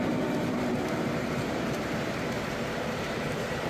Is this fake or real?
fake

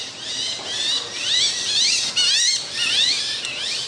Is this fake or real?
real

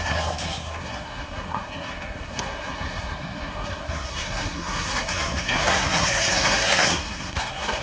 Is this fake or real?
fake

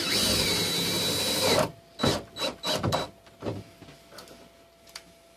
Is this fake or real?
real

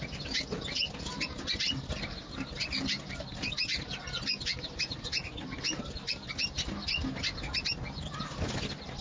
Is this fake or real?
real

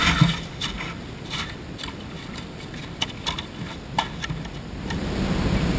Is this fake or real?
real